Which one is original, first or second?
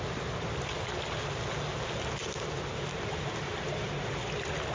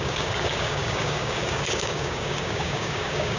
first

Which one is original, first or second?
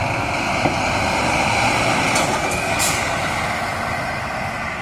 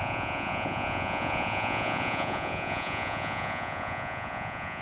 first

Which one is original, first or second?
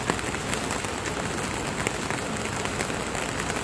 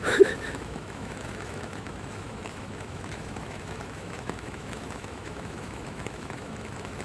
first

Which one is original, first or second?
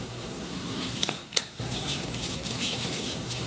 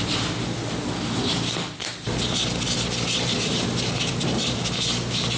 second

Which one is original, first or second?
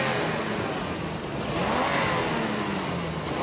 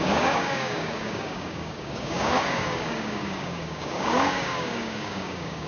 first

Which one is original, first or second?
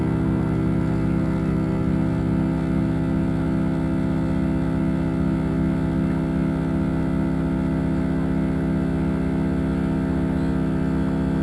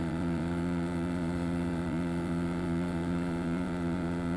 first